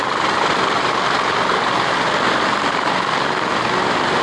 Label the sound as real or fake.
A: fake